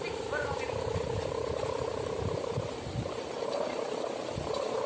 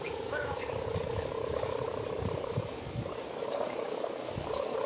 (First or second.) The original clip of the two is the first